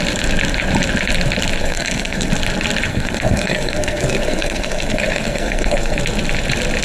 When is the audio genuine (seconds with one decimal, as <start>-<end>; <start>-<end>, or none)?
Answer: 0.0-1.6; 2.3-2.9; 6.0-6.8